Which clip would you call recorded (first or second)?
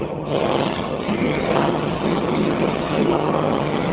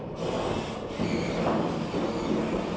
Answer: second